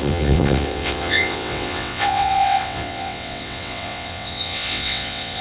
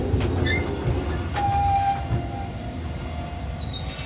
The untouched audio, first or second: second